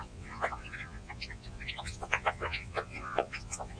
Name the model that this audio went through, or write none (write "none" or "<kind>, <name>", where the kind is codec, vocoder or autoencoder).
vocoder, Vocos